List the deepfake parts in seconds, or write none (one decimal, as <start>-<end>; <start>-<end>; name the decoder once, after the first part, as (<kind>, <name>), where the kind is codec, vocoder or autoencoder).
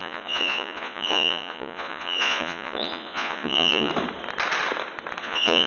0.0-3.9 (vocoder, Vocos); 5.2-5.7